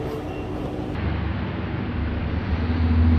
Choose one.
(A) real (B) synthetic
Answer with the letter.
A